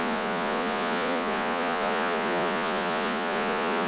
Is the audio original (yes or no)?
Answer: no